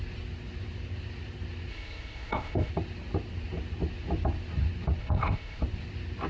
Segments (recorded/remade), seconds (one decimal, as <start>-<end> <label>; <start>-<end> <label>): 0.0-1.7 recorded; 1.7-2.7 remade; 2.7-5.0 recorded; 5.0-5.6 remade; 5.6-6.3 recorded